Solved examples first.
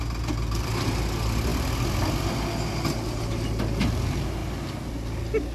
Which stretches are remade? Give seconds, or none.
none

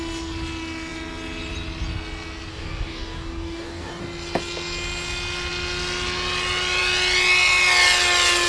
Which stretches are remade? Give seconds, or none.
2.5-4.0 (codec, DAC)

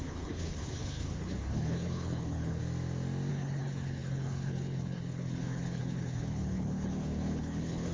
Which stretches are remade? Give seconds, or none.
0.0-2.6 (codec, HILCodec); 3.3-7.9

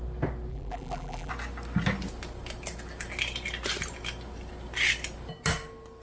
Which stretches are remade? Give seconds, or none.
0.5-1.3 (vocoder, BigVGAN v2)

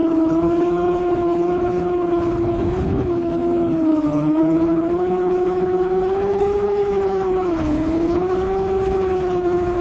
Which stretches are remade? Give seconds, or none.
0.0-9.8 (codec, HILCodec)

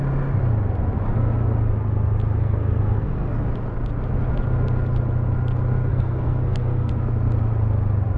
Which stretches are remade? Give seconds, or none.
2.4-3.3 (codec, SNAC); 5.9-6.9

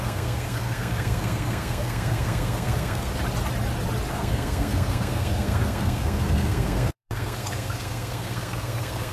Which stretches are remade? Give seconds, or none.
0.0-3.1 (codec, SNAC); 4.1-9.1

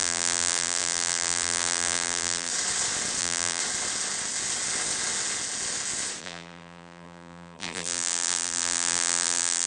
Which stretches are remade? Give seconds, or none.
0.0-2.5 (vocoder, BigVGAN v2); 3.2-3.6; 6.2-9.7